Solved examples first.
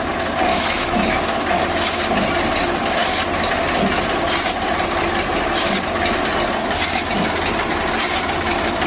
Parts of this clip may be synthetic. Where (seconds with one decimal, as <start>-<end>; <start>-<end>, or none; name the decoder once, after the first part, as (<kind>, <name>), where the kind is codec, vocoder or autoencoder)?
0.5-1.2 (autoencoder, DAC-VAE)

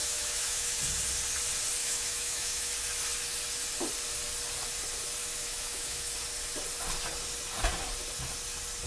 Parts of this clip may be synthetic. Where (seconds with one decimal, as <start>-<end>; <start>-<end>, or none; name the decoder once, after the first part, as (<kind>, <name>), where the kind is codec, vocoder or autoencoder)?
0.0-0.8 (autoencoder, DAC-VAE); 1.8-2.7; 5.2-6.1

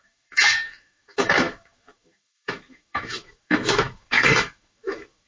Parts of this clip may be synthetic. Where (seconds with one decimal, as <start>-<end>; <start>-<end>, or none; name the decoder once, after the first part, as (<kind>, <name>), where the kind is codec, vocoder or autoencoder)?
0.0-5.3 (autoencoder, DAC-VAE)